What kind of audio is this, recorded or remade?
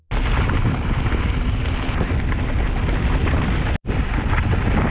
recorded